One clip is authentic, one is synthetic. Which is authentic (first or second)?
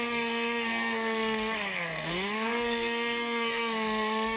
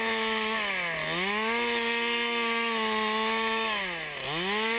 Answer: second